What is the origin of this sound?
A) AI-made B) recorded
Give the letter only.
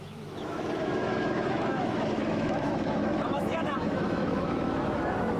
A